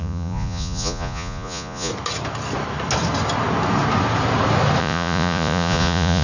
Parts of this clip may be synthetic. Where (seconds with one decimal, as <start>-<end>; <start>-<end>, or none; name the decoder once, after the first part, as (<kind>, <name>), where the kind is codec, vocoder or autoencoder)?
0.0-1.9 (vocoder, Vocos); 4.8-6.2